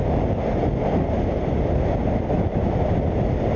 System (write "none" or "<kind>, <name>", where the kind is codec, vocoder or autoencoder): none